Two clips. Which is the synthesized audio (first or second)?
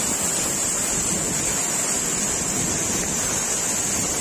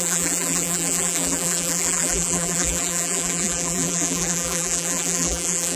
second